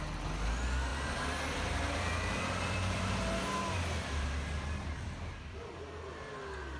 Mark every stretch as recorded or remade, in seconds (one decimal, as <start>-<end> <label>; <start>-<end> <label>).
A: 0.0-0.9 recorded; 0.9-3.4 remade; 3.4-6.8 recorded